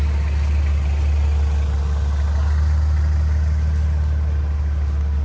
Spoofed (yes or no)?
no